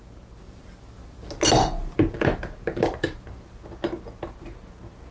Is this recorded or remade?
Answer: recorded